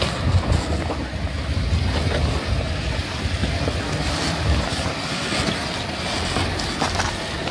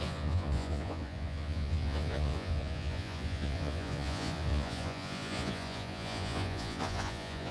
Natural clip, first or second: first